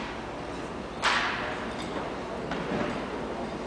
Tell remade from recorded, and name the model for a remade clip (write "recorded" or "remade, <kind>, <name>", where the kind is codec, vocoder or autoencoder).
recorded